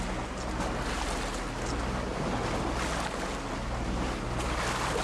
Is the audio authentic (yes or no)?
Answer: yes